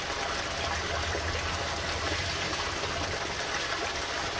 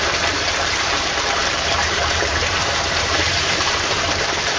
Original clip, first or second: first